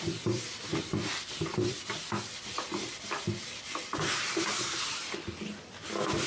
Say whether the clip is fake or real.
fake